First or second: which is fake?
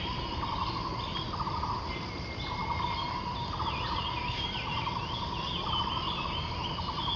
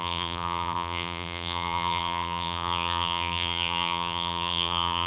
second